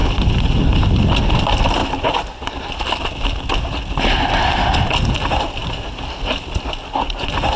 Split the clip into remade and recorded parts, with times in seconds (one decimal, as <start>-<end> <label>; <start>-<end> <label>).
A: 0.0-7.6 recorded